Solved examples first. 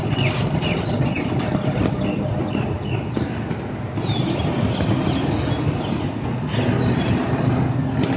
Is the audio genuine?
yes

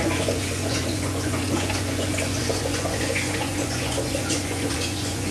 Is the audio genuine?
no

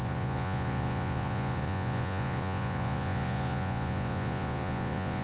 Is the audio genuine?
no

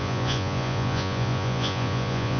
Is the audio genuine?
no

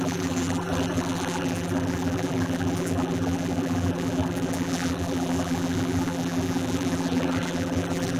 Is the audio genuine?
no